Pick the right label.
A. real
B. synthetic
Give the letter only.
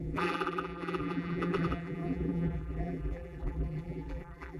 B